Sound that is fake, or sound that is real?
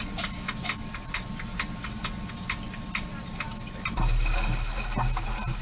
real